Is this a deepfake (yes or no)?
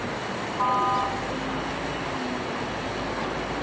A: no